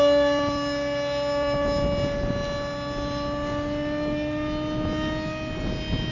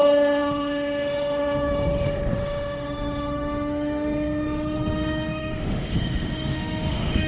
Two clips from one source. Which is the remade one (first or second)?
second